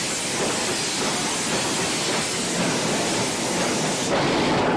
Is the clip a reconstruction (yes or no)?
no